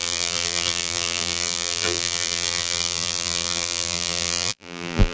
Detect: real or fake fake